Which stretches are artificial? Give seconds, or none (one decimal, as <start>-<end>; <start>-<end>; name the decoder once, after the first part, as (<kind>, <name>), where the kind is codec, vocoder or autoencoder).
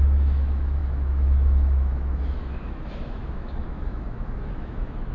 0.0-5.1 (autoencoder, DAC-VAE)